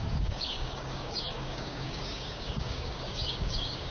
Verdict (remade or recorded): remade